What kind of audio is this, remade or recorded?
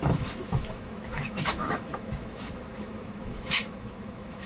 remade